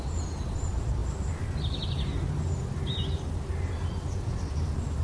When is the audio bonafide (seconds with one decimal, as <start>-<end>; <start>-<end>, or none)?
0.0-5.0